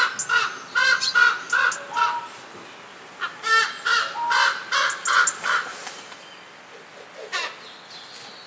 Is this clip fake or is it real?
real